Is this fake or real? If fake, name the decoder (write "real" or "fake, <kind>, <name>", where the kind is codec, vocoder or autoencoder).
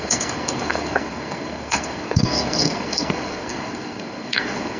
fake, codec, SNAC